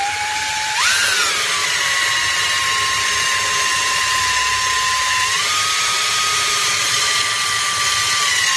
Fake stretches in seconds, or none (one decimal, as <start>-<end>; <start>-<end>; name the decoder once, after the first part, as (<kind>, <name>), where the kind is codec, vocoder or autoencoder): 0.0-1.3 (vocoder, BigVGAN v2); 3.7-4.4; 5.6-7.1